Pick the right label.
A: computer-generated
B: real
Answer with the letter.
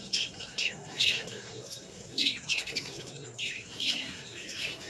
A